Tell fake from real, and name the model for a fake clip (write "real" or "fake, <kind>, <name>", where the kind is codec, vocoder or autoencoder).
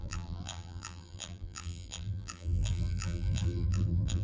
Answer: fake, vocoder, BigVGAN v2